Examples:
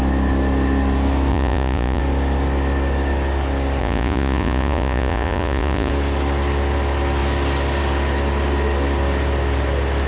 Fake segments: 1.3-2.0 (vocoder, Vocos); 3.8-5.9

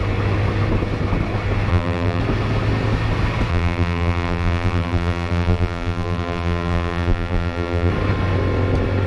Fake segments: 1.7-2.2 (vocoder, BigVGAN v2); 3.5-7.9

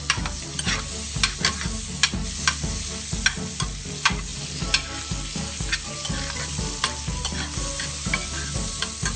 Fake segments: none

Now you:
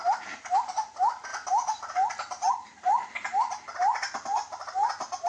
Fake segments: 0.0-3.7 (vocoder, BigVGAN v2)

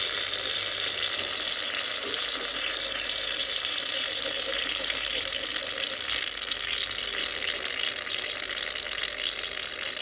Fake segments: 2.0-5.5 (vocoder, BigVGAN v2)

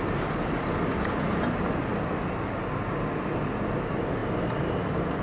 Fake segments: none